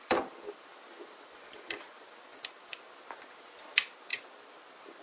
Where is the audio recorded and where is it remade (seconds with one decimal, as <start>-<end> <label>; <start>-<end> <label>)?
0.0-5.0 recorded